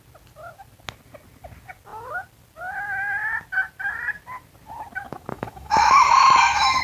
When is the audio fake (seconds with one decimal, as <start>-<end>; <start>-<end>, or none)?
5.3-6.8